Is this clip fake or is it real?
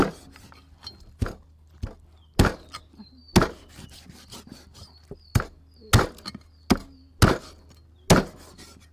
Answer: real